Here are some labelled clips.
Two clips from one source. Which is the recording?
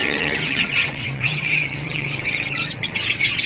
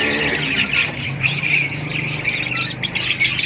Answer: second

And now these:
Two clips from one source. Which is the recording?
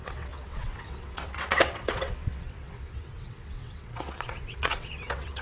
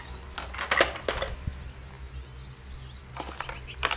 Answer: second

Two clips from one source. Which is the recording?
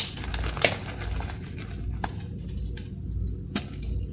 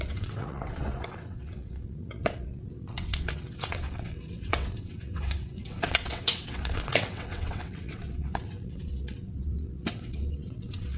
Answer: first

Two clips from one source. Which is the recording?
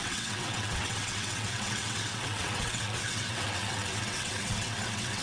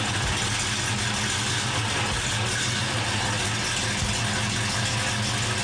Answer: second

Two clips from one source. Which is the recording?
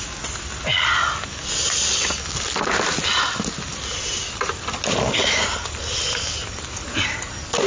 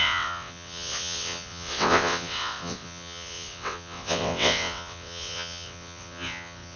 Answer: first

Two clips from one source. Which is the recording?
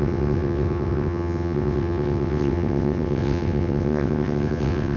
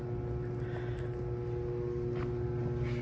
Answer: second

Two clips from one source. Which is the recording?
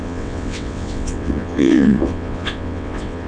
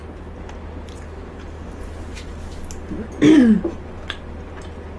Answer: second